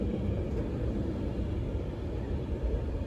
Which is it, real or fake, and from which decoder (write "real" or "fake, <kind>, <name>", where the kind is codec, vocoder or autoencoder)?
real